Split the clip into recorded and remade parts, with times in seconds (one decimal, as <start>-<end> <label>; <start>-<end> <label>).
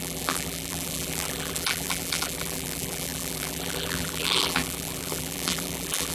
0.0-6.1 remade